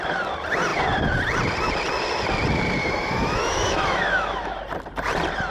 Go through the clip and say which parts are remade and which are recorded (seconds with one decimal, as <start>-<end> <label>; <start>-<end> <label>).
0.0-2.8 recorded; 2.8-4.6 remade; 4.6-5.5 recorded